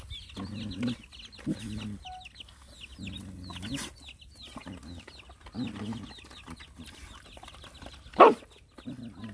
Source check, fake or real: real